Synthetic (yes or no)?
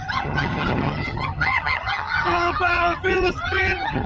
yes